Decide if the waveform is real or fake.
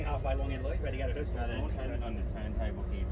real